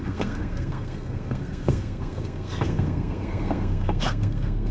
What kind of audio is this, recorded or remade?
remade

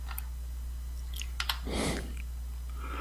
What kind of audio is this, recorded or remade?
recorded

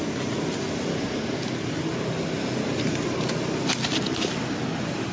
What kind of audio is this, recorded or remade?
recorded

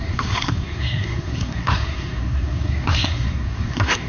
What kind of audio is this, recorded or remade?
remade